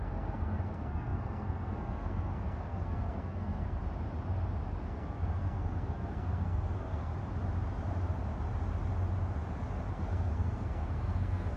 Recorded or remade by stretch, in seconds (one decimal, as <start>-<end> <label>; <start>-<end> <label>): 0.0-3.8 remade; 3.8-4.8 recorded; 4.8-7.1 remade; 7.1-9.9 recorded; 9.9-11.6 remade